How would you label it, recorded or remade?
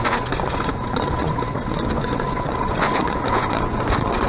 remade